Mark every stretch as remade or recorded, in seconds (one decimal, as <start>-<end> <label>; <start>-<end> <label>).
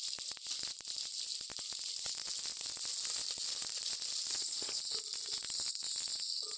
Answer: 0.0-4.3 recorded; 4.3-4.8 remade; 4.8-6.6 recorded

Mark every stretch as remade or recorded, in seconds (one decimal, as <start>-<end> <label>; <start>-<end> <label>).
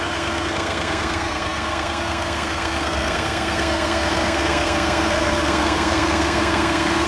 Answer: 0.0-7.1 remade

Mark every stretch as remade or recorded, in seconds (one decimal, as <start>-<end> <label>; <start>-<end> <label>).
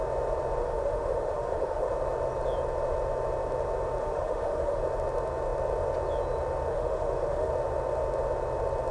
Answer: 0.0-0.6 recorded; 0.6-1.9 remade; 1.9-4.0 recorded; 4.0-4.8 remade; 4.8-6.7 recorded; 6.7-7.5 remade; 7.5-8.9 recorded